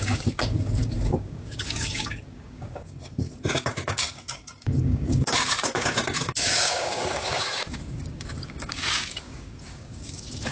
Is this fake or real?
fake